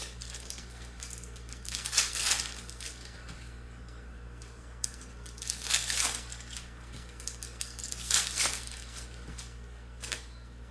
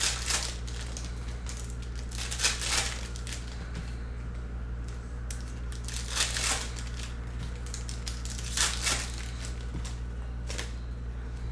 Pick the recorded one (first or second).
second